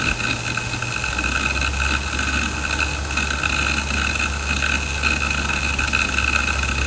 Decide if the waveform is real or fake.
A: real